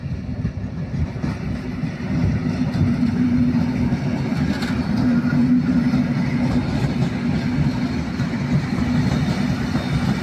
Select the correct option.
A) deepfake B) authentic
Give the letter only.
B